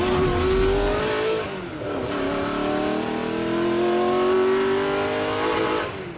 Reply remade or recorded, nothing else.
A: recorded